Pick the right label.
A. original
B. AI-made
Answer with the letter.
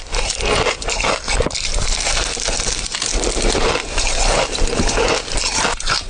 A